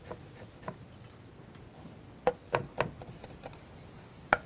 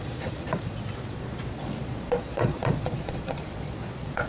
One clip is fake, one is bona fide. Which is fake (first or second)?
second